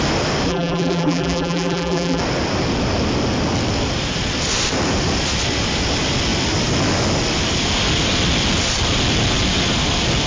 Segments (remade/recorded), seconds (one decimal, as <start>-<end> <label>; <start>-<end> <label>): 0.0-0.5 recorded; 0.5-2.2 remade; 2.2-10.3 recorded